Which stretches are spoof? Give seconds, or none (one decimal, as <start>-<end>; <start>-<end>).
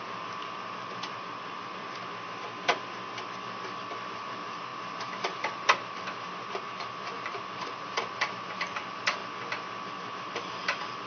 0.0-2.0; 4.1-9.2; 10.1-11.1